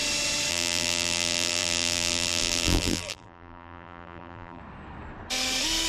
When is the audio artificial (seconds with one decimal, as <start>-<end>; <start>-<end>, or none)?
0.5-4.6